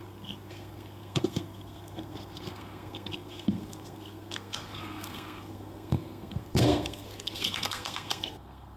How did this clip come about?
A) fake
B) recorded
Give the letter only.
A